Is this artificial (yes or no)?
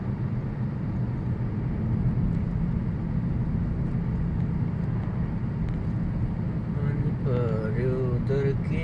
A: no